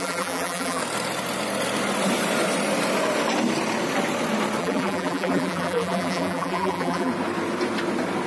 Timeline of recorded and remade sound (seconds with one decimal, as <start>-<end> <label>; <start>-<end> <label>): 0.0-0.8 remade; 0.8-4.6 recorded; 4.6-7.1 remade; 7.1-8.3 recorded